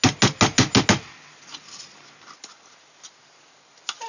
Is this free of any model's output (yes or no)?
yes